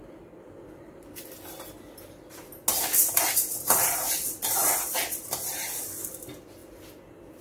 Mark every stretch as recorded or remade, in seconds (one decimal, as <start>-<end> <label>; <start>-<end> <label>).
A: 0.0-7.4 recorded

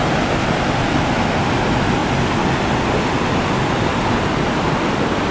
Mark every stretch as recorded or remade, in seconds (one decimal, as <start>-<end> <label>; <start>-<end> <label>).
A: 0.0-5.3 recorded

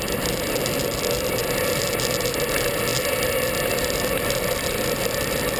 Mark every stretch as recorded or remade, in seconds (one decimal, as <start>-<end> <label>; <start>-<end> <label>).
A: 0.0-5.6 recorded

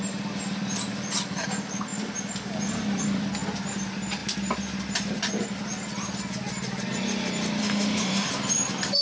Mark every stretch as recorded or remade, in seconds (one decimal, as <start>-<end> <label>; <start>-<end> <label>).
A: 0.0-7.6 recorded; 7.6-8.3 remade; 8.3-9.0 recorded

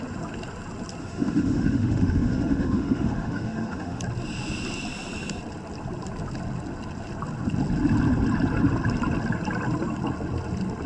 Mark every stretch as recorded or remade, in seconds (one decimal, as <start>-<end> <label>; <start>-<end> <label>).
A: 0.0-1.0 recorded; 1.0-4.0 remade; 4.0-10.9 recorded

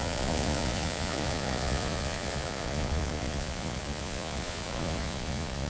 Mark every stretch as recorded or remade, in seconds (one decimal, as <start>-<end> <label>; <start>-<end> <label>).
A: 0.0-5.7 remade

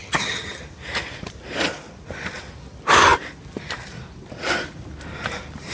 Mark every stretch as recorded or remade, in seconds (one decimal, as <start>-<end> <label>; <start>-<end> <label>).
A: 0.0-0.6 remade; 0.6-5.7 recorded

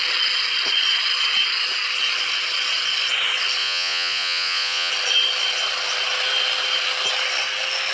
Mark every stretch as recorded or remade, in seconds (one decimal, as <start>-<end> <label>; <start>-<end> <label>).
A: 0.0-3.6 recorded; 3.6-4.9 remade; 4.9-7.9 recorded